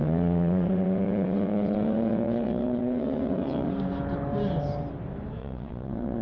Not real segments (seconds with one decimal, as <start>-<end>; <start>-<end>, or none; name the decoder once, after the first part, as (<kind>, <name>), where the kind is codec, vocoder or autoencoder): 0.0-3.7 (vocoder, WaveNeXt); 5.4-6.2